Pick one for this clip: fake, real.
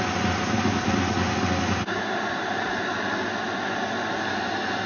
real